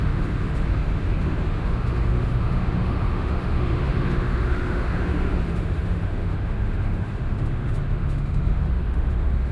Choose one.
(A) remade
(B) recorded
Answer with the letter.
A